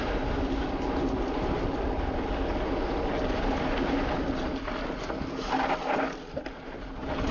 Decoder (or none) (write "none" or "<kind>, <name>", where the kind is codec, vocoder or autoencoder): none